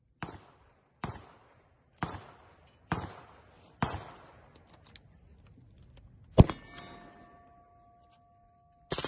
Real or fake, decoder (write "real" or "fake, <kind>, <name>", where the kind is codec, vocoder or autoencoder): real